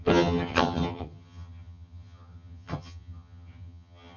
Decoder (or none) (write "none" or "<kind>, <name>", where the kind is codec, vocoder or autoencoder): vocoder, HiFi-GAN